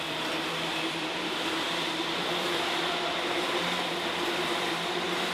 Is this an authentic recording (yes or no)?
no